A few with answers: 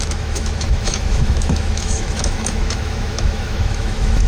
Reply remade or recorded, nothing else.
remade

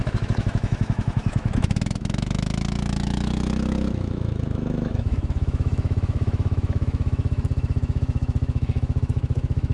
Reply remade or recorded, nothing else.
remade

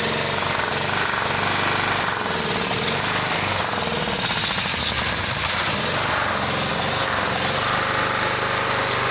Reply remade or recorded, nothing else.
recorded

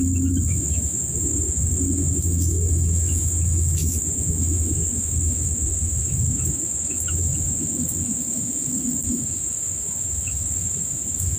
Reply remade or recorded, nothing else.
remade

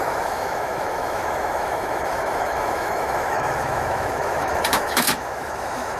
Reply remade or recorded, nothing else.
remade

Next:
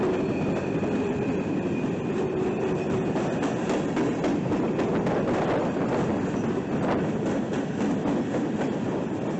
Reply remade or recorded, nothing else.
recorded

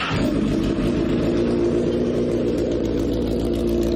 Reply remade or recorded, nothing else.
recorded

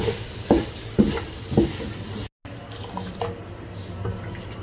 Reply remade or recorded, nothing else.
recorded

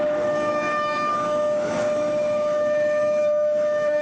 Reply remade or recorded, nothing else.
remade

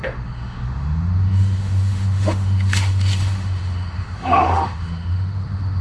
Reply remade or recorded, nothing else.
remade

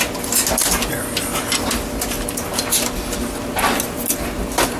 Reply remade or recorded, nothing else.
recorded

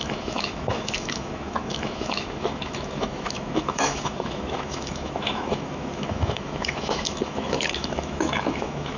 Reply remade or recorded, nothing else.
remade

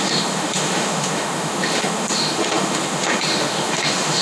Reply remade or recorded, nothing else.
remade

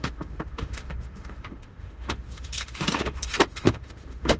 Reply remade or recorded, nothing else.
remade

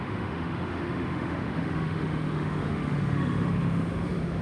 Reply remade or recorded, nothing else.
remade